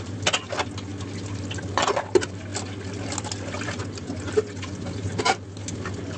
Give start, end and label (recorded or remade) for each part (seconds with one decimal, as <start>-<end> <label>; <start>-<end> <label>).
0.0-6.2 recorded